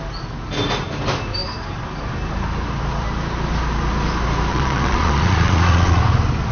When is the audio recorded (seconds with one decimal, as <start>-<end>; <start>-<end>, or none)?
0.0-4.5; 6.0-6.5